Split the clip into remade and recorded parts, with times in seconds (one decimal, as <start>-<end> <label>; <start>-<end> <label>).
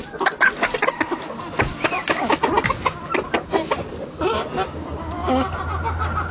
0.0-6.3 recorded